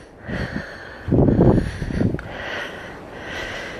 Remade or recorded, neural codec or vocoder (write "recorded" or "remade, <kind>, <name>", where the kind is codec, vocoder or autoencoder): recorded